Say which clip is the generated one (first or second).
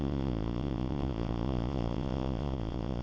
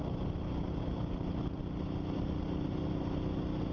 first